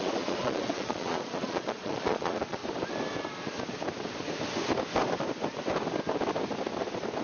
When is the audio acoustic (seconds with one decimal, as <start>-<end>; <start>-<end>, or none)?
2.6-7.2